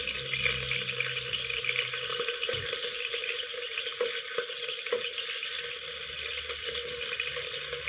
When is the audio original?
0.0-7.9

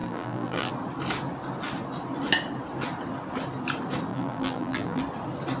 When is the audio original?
0.7-4.1; 5.0-5.6

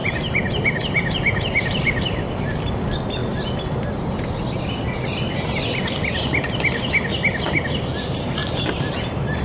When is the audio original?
2.2-8.4

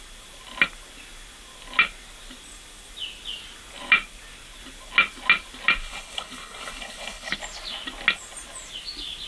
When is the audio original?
0.0-5.8; 7.3-9.3

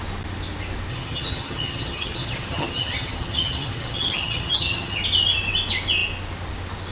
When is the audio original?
0.0-0.9; 5.0-6.9

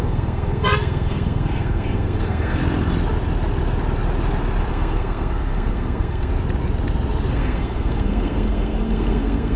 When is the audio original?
2.6-4.7; 6.3-7.3